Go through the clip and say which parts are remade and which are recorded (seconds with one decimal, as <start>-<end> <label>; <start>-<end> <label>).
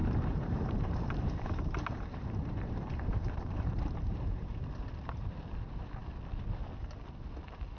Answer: 0.0-4.7 remade; 4.7-7.8 recorded